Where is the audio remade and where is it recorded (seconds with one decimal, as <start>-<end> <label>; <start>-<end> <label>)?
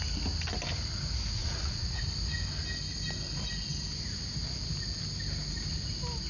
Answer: 0.0-1.4 recorded; 1.4-2.0 remade; 2.0-6.3 recorded